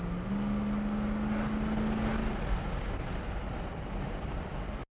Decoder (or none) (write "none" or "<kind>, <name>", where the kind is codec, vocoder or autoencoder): none